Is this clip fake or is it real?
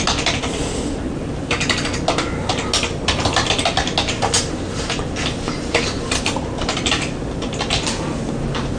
real